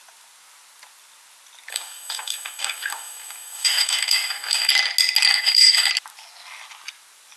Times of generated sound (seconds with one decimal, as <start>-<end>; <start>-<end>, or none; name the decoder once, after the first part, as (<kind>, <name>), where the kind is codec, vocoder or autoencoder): 1.7-4.7 (codec, DAC); 5.3-5.9

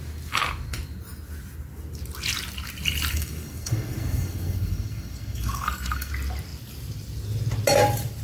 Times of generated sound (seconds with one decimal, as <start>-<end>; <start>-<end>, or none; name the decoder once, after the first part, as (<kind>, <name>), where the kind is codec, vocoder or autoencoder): 3.1-6.1 (codec, SNAC)

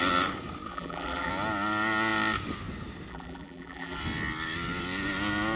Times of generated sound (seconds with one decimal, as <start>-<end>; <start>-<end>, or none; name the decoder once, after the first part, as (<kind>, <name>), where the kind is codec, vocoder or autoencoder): 0.7-1.3 (vocoder, BigVGAN v2); 3.1-4.0

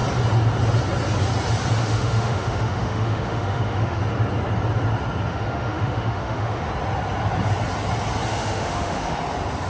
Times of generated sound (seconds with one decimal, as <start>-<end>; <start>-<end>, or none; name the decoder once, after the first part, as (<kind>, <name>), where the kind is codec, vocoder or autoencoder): 1.8-4.0 (autoencoder, DAC-VAE); 5.3-6.7; 8.3-9.2

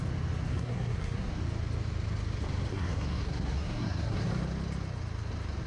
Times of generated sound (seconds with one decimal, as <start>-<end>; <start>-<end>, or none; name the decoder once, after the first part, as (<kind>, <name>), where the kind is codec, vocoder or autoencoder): 0.5-1.4 (codec, SNAC); 2.7-4.3